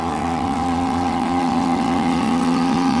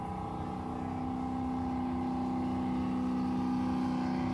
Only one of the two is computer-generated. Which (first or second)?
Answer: first